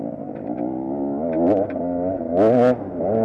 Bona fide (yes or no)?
yes